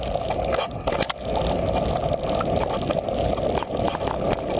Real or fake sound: real